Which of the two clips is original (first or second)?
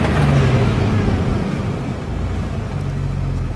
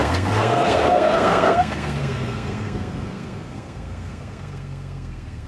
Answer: first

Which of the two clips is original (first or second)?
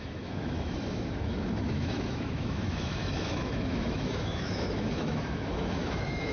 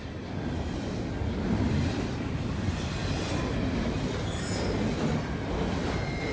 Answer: second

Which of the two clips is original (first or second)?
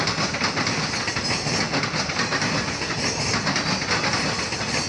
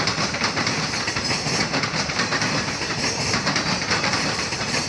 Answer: first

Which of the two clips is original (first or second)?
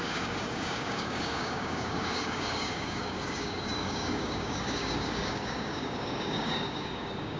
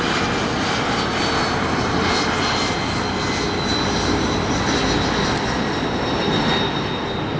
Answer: second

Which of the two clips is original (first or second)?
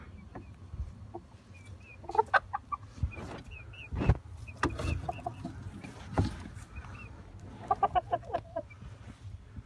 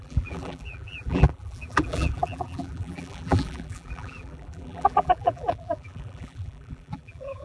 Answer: first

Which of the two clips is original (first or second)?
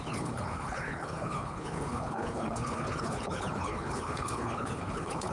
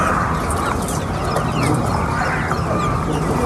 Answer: second